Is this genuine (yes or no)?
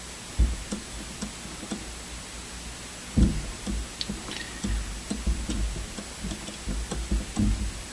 yes